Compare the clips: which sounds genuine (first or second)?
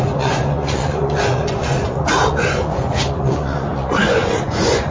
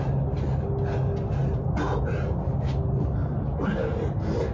second